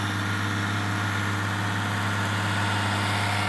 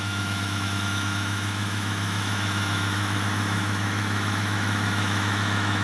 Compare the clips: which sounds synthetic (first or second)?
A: second